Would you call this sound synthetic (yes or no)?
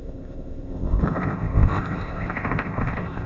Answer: yes